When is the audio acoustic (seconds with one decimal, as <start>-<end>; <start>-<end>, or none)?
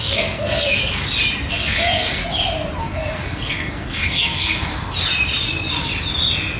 0.8-1.5; 2.2-2.8; 4.7-6.6